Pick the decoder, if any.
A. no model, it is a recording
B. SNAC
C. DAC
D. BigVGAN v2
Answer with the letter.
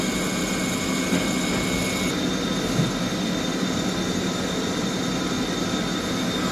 A